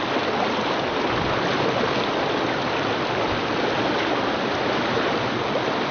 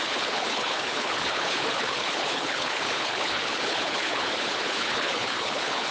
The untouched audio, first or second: first